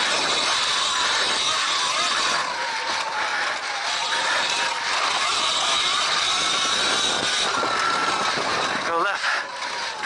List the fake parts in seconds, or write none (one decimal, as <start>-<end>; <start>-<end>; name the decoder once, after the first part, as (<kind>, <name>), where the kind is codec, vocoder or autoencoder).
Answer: none

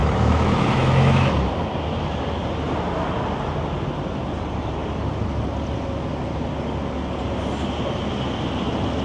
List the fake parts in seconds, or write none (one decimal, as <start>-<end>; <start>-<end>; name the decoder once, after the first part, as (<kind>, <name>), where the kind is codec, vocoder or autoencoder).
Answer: 0.0-1.3 (autoencoder, DAC-VAE)